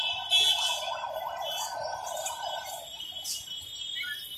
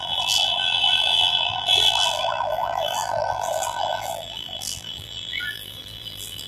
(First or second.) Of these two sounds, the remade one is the second